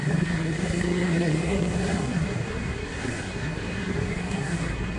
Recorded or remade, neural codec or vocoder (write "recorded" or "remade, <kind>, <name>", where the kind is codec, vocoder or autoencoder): remade, codec, SNAC